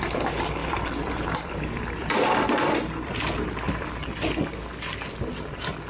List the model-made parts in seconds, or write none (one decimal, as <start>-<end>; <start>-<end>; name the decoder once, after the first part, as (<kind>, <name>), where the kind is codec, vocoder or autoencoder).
0.6-4.1 (vocoder, BigVGAN v2)